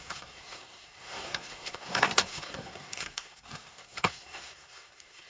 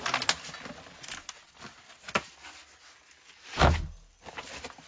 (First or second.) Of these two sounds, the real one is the second